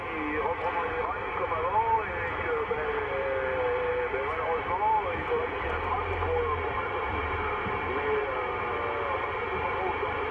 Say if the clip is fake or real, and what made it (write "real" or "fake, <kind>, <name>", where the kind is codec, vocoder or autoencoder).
real